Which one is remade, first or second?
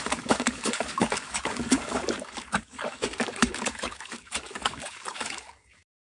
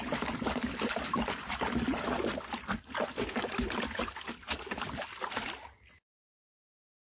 first